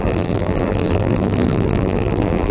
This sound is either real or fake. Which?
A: fake